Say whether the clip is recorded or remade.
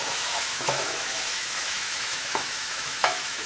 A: remade